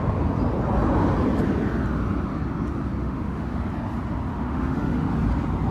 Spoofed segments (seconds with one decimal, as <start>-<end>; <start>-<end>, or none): 3.0-3.6; 4.3-5.1